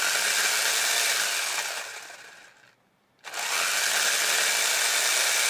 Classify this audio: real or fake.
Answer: real